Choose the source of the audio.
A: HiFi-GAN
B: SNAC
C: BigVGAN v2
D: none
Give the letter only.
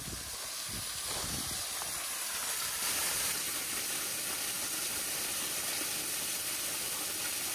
D